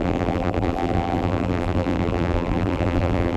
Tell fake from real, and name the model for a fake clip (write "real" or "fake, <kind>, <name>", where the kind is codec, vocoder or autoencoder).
fake, vocoder, BigVGAN v2